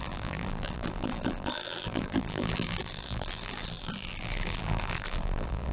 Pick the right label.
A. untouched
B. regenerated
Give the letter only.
B